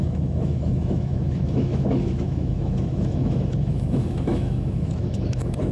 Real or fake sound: fake